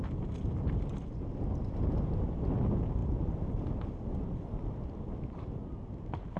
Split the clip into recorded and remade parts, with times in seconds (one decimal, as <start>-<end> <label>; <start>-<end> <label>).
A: 0.0-6.4 recorded